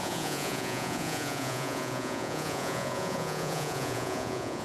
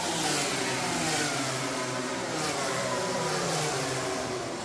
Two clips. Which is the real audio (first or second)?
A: second